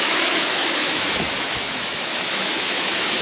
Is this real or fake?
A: fake